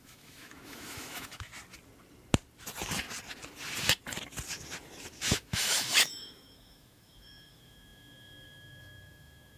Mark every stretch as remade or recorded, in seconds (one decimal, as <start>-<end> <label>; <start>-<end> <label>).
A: 0.0-1.5 remade; 1.5-5.1 recorded; 5.1-9.6 remade